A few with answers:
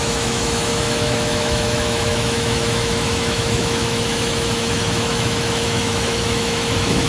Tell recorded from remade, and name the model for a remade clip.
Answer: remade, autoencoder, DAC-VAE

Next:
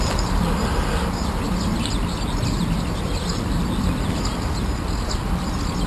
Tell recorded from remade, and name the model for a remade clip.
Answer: recorded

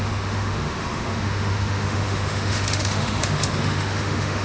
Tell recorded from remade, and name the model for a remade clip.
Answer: remade, autoencoder, DAC-VAE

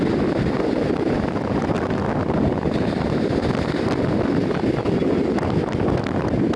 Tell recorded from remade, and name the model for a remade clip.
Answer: recorded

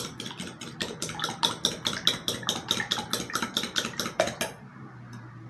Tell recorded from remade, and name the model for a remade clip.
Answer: recorded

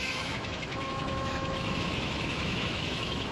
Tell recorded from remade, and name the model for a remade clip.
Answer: remade, autoencoder, DAC-VAE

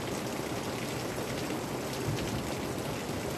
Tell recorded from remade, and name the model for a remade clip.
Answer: recorded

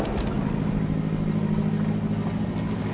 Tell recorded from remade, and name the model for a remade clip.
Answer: recorded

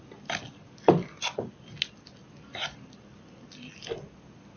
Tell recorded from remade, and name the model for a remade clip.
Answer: recorded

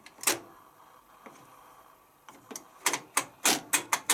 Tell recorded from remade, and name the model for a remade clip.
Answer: recorded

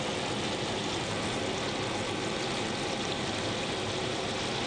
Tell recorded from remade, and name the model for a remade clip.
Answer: recorded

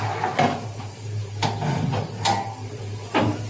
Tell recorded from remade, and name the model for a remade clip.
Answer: recorded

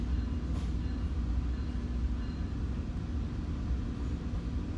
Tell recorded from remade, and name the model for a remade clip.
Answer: recorded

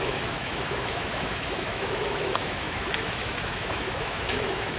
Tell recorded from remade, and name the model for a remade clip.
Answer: remade, autoencoder, DAC-VAE